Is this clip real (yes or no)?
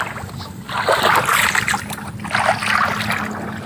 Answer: yes